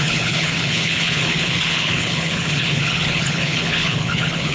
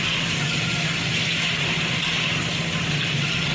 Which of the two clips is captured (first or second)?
second